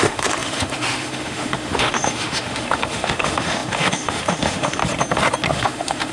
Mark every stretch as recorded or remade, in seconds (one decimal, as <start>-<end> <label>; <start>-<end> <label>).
0.0-4.8 remade; 4.8-5.5 recorded; 5.5-6.1 remade